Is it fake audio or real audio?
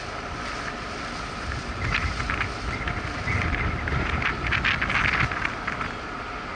real